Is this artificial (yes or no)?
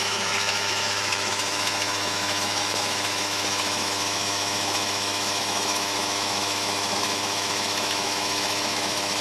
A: yes